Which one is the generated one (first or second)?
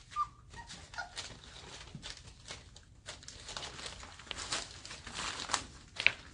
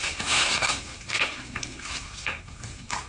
second